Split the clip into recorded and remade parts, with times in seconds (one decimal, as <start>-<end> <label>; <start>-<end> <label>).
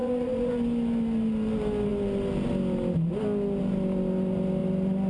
0.0-0.5 remade; 0.5-5.1 recorded